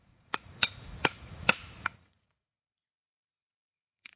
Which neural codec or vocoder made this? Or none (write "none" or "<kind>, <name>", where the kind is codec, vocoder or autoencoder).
vocoder, Vocos